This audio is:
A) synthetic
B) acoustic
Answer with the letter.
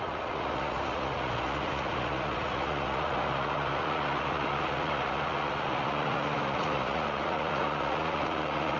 A